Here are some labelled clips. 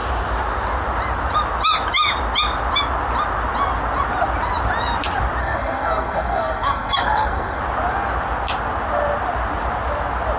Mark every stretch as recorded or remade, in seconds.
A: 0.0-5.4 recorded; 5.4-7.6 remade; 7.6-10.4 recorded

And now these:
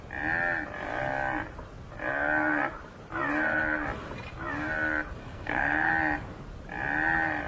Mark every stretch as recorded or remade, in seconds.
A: 0.0-5.2 recorded; 5.2-5.9 remade; 5.9-7.5 recorded